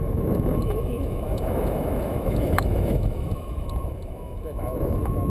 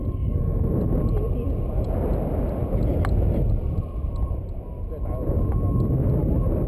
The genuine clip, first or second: second